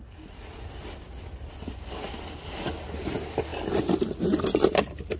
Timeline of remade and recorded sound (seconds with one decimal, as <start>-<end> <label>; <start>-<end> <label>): 0.0-5.2 recorded